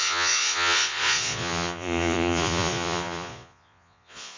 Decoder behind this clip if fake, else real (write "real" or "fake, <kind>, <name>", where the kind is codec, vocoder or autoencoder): fake, vocoder, Vocos